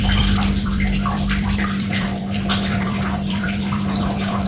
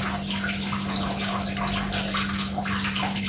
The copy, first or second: first